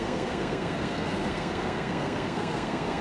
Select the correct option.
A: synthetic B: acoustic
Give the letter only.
A